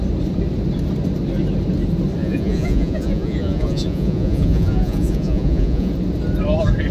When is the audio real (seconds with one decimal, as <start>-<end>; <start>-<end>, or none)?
0.0-2.2; 5.9-6.9

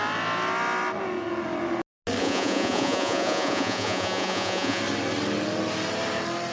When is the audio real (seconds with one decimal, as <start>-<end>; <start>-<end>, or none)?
0.0-2.2; 4.8-6.5

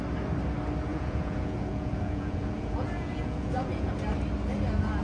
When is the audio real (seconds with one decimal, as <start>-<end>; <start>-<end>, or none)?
0.0-0.9; 3.9-5.0

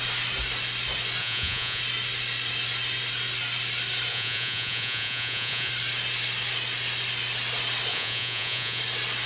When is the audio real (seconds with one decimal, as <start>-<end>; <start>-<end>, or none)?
0.0-1.2; 1.8-4.1; 5.7-7.9; 8.8-9.3

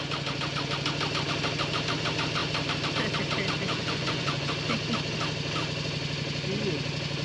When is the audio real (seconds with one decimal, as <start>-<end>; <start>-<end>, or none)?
0.0-3.6; 4.5-7.2

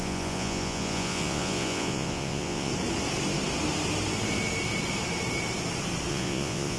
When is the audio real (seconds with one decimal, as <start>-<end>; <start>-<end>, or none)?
2.7-6.1

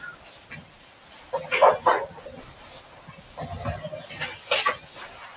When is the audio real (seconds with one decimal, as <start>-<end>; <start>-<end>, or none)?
0.0-5.4